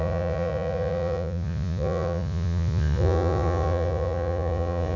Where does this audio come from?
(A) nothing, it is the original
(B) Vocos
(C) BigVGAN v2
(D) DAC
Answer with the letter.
B